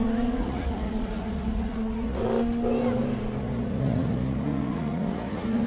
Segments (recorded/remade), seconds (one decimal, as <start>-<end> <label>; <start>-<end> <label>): 0.0-2.2 remade; 2.2-3.4 recorded; 3.4-5.7 remade